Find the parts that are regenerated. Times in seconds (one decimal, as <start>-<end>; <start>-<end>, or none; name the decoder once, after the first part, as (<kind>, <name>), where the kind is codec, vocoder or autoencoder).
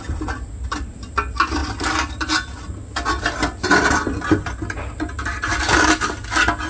none